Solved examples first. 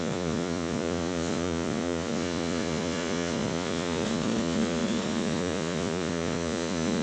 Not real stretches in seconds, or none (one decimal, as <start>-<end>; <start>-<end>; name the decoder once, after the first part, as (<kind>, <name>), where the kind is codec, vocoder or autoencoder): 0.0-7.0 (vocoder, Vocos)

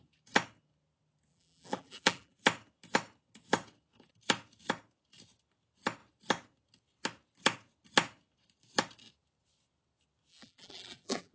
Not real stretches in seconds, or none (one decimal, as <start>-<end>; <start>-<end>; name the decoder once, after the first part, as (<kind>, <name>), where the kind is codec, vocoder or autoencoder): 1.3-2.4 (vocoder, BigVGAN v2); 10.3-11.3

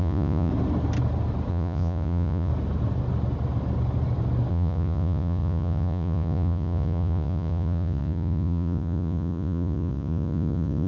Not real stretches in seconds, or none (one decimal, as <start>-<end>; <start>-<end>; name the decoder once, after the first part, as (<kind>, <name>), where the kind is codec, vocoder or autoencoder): 0.0-0.5 (vocoder, Vocos); 1.5-2.5; 4.5-10.9